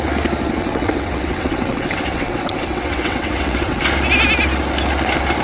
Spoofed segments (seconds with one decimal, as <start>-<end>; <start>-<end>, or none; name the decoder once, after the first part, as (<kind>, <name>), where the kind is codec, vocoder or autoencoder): 0.6-3.8 (vocoder, WaveNeXt)